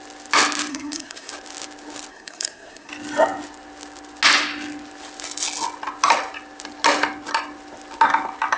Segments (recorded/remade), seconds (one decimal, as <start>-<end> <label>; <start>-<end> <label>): 0.0-0.7 recorded; 0.7-1.3 remade; 1.3-2.1 recorded; 2.1-2.9 remade; 2.9-8.6 recorded